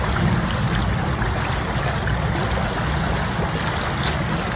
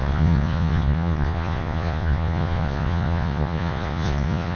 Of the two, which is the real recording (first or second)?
first